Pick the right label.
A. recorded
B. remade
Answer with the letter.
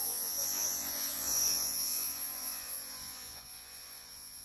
B